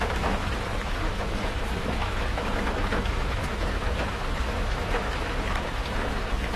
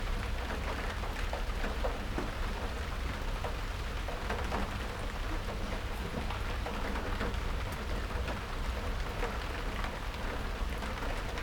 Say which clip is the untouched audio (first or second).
second